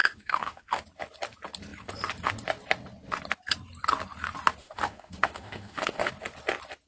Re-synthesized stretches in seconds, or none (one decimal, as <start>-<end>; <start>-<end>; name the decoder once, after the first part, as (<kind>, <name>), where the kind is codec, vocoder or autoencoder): 0.0-0.8 (autoencoder, DAC-VAE); 4.6-6.1